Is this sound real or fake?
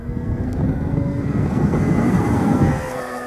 fake